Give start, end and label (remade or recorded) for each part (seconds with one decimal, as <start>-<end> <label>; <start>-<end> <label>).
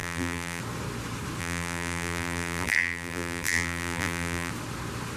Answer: 0.0-0.6 remade; 0.6-1.4 recorded; 1.4-4.5 remade; 4.5-5.2 recorded